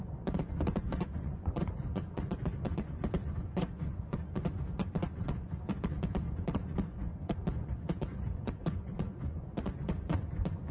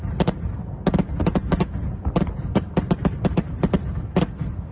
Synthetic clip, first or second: first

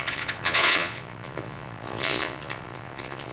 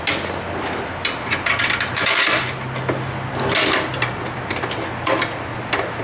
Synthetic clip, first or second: first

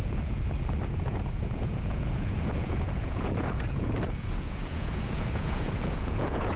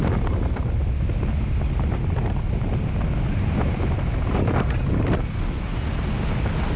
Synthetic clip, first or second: first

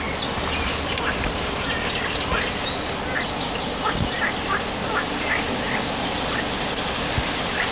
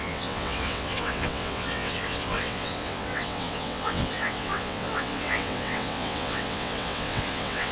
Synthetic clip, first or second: second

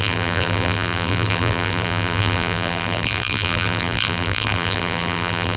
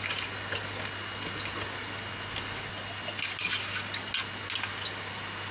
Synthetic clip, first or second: first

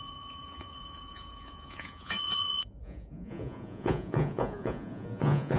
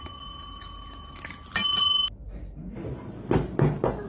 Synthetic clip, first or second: first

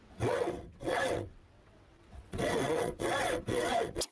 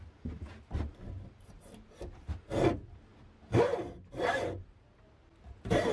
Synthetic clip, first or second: first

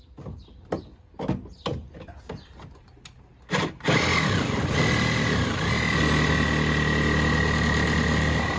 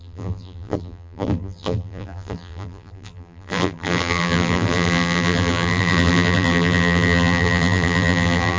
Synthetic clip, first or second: second